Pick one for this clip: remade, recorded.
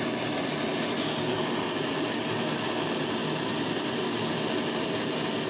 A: recorded